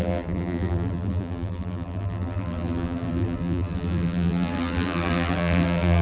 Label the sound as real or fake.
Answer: fake